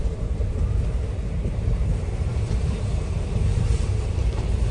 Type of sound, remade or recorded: remade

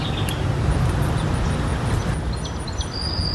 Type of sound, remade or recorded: recorded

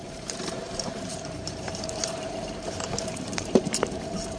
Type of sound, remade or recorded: remade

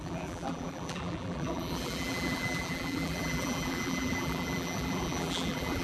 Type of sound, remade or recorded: remade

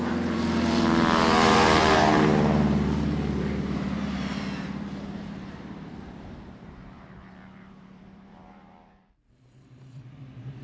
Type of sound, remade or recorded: remade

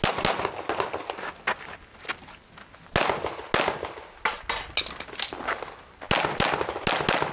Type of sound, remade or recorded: recorded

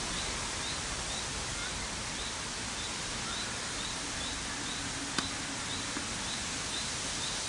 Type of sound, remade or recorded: recorded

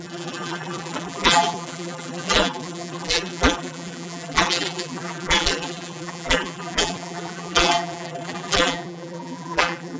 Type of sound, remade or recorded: remade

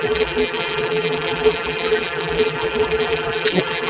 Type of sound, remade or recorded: remade